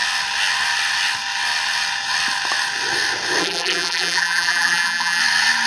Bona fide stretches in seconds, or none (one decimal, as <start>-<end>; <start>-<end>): 0.0-3.4; 5.2-5.7

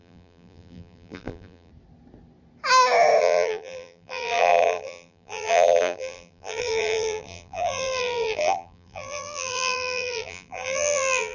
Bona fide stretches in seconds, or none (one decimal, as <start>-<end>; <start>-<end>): 1.7-3.2